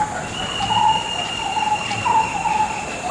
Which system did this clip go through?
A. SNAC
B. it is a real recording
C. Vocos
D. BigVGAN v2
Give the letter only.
B